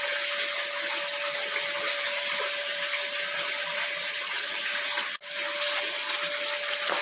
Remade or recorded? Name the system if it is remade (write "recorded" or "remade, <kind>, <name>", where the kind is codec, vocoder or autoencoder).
recorded